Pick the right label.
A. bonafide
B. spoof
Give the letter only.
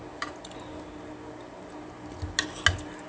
A